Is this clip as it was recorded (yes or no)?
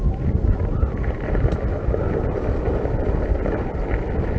yes